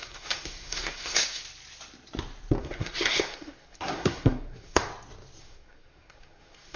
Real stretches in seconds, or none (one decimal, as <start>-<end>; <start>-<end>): 1.4-2.6; 4.9-5.4